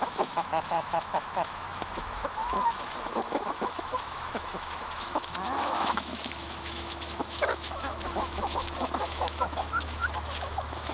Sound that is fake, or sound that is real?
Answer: fake